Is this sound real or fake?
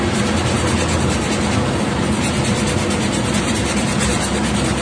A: real